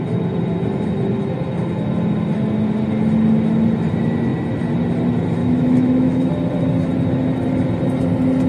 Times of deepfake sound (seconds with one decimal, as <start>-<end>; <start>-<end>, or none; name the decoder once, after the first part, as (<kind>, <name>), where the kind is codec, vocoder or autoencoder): 5.4-6.3 (autoencoder, DAC-VAE)